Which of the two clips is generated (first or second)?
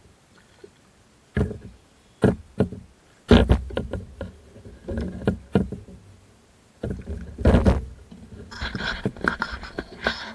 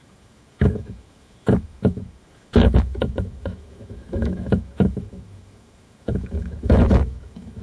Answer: second